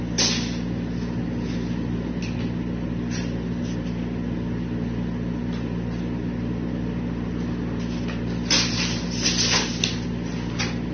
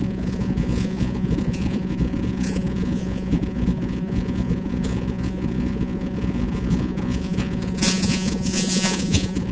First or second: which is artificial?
second